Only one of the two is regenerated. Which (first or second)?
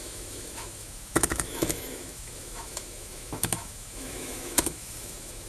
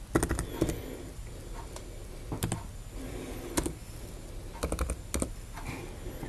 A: first